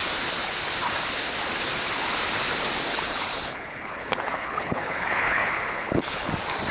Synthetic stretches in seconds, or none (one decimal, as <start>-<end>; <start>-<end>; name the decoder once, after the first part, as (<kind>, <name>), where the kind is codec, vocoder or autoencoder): 2.9-6.3 (codec, HILCodec)